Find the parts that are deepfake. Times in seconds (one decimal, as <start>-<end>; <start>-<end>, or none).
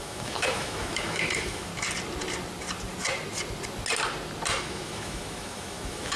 0.0-1.7; 4.6-6.2